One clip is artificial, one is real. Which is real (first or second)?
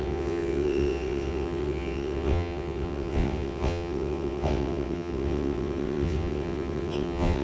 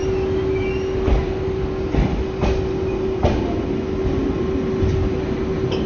second